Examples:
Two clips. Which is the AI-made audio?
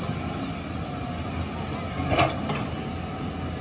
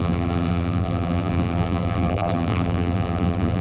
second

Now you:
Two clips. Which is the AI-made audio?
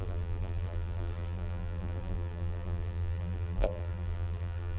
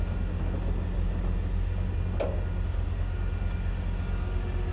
first